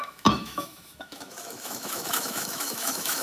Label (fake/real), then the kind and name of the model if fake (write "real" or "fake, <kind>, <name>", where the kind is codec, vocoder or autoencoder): fake, autoencoder, DAC-VAE